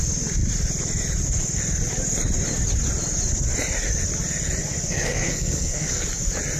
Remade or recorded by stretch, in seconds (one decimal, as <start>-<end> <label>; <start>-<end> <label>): 0.0-4.9 recorded; 4.9-6.0 remade; 6.0-6.6 recorded